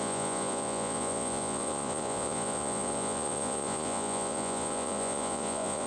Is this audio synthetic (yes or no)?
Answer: yes